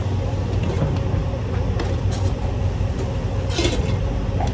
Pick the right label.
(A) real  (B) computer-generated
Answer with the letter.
A